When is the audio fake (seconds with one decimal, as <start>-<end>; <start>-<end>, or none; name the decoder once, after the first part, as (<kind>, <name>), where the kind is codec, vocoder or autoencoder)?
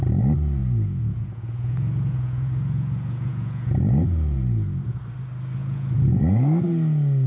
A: 0.6-5.0 (vocoder, Vocos); 5.6-6.2